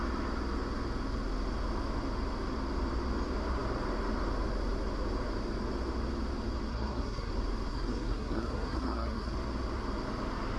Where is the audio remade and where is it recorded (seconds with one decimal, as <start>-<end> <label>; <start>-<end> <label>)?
0.0-6.7 recorded; 6.7-7.3 remade; 7.3-7.7 recorded; 7.7-9.3 remade; 9.3-10.6 recorded